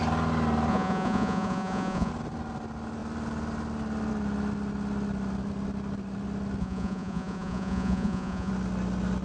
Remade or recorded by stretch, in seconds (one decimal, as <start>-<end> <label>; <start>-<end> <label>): 0.0-0.7 recorded; 0.7-2.1 remade; 2.1-6.6 recorded; 6.6-8.5 remade; 8.5-9.2 recorded